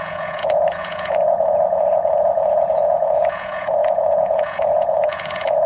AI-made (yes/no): yes